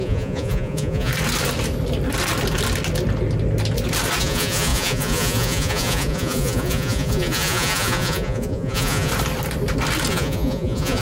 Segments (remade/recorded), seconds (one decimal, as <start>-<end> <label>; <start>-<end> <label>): 0.0-1.1 remade; 1.1-4.2 recorded; 4.2-9.1 remade; 9.1-10.1 recorded; 10.1-11.0 remade